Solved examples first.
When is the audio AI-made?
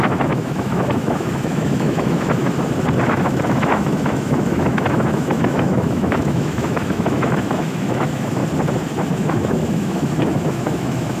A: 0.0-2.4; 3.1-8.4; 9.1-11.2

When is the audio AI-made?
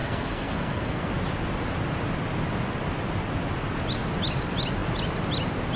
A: 0.0-1.1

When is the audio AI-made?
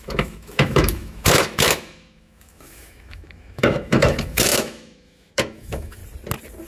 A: 0.0-6.0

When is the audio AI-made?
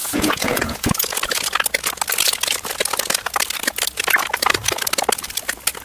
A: 0.0-1.1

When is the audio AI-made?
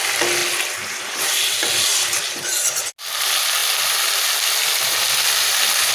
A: none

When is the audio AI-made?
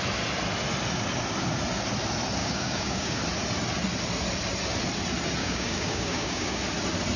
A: 2.4-3.2; 5.4-6.6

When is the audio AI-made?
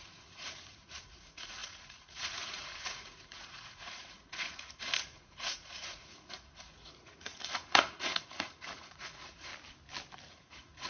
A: 0.0-9.5; 10.3-10.9